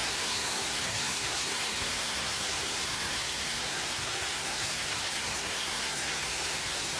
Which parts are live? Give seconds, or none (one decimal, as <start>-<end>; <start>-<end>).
none